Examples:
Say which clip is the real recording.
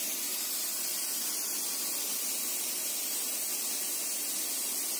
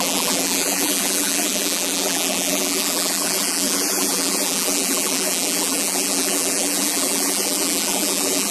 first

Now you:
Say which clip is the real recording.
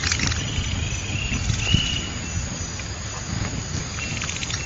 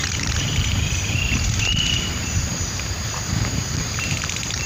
first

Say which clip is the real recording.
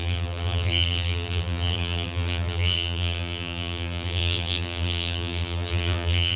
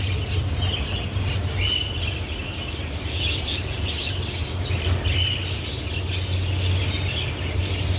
second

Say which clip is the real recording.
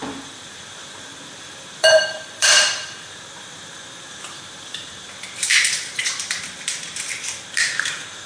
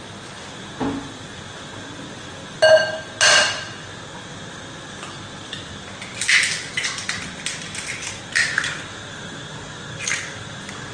second